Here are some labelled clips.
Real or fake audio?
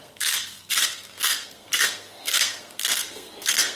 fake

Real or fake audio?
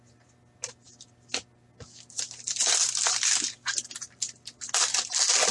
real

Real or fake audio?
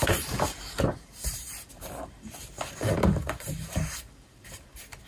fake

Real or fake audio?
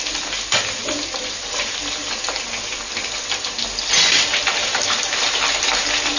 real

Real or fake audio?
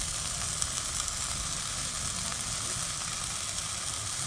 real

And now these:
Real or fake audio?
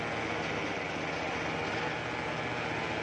real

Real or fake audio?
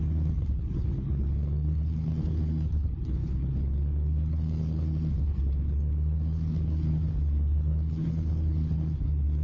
fake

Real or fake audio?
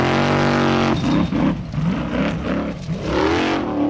real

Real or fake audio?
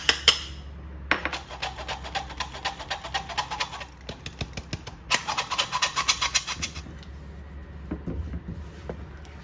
real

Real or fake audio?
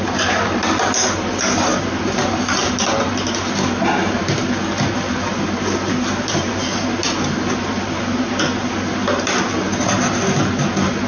real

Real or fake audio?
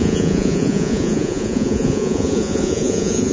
fake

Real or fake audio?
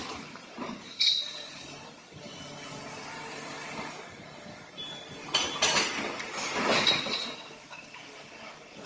real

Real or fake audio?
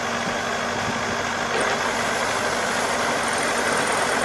real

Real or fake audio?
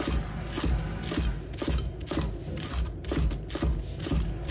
real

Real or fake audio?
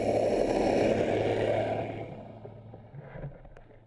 real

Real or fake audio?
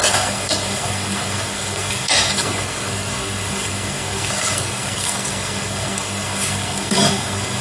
fake